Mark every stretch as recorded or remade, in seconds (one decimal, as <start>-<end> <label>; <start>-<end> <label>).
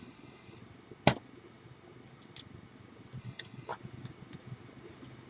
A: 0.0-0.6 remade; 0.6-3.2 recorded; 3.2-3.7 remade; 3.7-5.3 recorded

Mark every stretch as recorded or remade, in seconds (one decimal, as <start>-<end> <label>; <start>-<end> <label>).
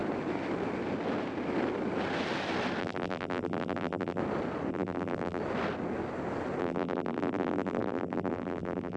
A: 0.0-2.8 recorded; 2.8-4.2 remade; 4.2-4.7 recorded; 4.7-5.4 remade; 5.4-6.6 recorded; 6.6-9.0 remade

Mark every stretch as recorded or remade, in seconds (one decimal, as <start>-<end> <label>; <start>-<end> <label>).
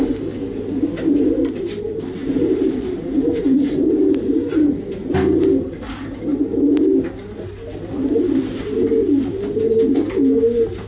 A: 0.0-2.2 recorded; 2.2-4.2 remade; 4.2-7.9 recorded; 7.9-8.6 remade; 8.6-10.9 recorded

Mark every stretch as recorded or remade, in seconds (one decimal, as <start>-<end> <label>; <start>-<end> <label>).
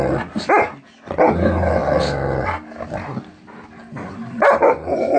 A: 0.0-5.2 recorded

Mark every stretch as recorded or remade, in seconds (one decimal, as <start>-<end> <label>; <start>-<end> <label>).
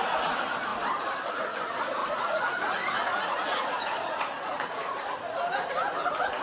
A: 0.0-2.0 recorded; 2.0-5.0 remade; 5.0-6.4 recorded